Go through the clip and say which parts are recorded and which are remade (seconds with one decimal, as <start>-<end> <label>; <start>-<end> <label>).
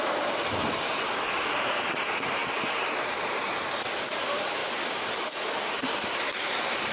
0.0-0.4 remade; 0.4-0.9 recorded; 0.9-4.6 remade; 4.6-6.0 recorded; 6.0-6.9 remade